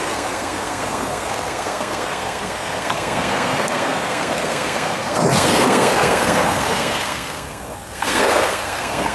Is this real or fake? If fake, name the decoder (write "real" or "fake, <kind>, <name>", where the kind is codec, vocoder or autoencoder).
fake, codec, SNAC